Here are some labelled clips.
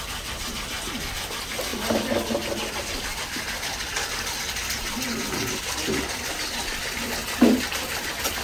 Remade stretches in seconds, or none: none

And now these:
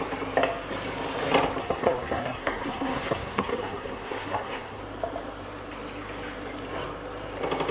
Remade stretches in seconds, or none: 1.6-4.8

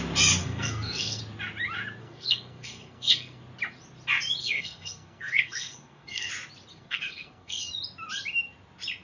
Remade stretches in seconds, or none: 0.4-1.2; 2.0-3.4; 4.4-6.3; 6.7-7.7

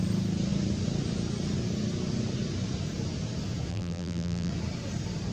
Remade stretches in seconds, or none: 3.7-4.5

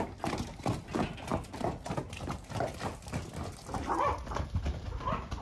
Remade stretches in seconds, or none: none

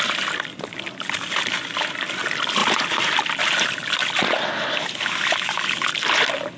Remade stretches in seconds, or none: none

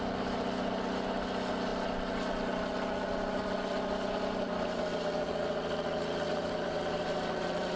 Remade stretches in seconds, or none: 6.3-7.8

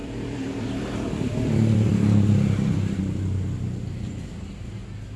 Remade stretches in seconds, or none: 0.0-3.0